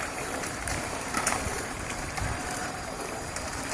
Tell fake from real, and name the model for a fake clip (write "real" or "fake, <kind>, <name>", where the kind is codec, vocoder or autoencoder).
fake, vocoder, BigVGAN v2